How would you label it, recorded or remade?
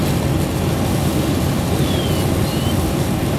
recorded